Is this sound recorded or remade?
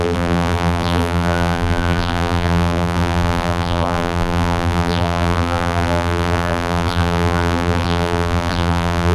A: remade